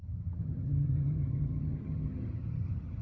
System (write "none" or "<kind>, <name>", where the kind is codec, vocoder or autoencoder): vocoder, HiFi-GAN